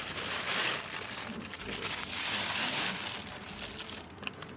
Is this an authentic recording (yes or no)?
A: yes